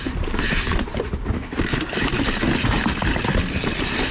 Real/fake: fake